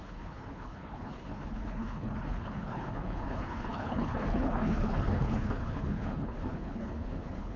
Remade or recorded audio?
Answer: remade